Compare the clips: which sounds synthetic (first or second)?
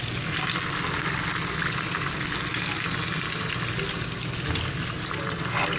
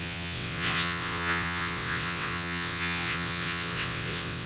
second